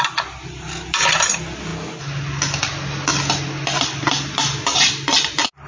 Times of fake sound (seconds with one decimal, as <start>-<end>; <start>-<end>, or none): none